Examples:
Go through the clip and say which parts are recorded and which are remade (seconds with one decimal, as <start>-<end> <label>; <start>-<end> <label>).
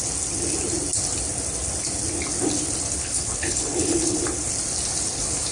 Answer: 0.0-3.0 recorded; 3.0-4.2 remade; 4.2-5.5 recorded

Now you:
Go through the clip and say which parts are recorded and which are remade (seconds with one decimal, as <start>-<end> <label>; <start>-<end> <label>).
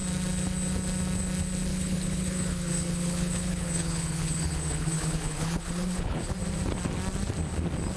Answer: 0.0-1.7 recorded; 1.7-6.3 remade; 6.3-8.0 recorded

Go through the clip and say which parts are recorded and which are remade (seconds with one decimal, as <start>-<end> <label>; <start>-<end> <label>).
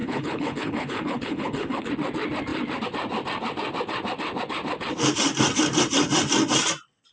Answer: 0.0-1.9 remade; 1.9-7.1 recorded